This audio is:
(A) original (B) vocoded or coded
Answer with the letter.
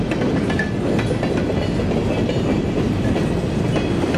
A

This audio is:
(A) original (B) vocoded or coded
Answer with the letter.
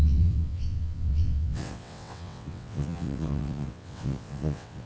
B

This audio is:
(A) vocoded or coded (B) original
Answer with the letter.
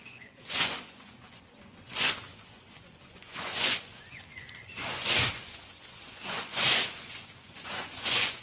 A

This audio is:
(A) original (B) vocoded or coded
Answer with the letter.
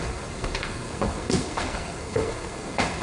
B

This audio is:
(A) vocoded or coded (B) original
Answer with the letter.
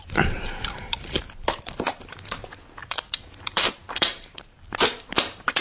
A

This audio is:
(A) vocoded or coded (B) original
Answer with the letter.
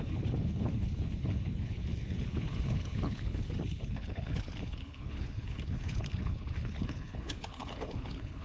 A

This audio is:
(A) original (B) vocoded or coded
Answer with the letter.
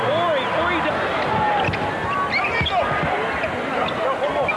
A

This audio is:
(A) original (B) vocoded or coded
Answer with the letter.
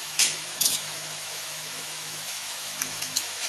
B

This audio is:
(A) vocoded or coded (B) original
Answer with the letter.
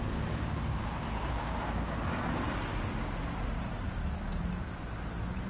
B